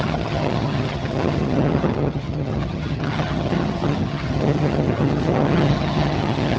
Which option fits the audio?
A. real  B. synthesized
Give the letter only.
B